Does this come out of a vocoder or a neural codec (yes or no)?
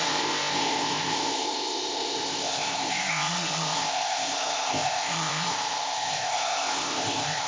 yes